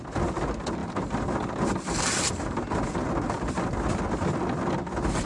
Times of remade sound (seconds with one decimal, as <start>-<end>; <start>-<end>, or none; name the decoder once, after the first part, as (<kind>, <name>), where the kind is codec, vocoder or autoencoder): none